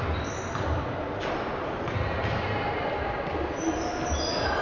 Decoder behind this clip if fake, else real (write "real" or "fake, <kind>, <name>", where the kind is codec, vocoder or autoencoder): real